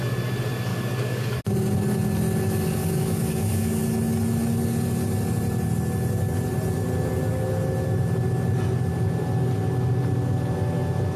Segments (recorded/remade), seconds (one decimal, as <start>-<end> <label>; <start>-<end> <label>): 0.0-0.7 recorded; 0.7-1.4 remade; 1.4-2.8 recorded; 2.8-3.8 remade; 3.8-11.2 recorded